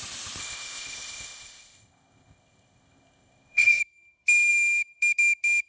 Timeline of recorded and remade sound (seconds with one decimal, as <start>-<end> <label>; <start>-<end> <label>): 0.0-0.4 recorded; 0.4-3.8 remade; 3.8-5.7 recorded